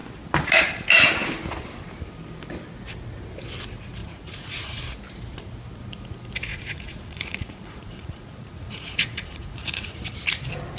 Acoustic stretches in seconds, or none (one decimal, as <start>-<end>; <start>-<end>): 0.0-4.0; 4.8-6.5; 10.0-10.8